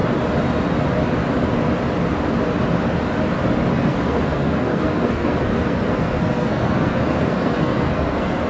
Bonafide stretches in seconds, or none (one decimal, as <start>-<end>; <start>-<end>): 0.0-3.7